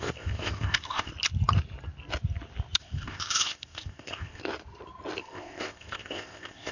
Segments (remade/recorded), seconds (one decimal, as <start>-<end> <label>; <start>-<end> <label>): 0.0-1.1 remade; 1.1-2.8 recorded; 2.8-4.4 remade; 4.4-5.2 recorded; 5.2-6.7 remade